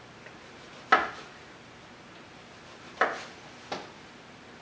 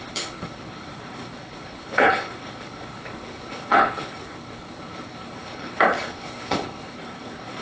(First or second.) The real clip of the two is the first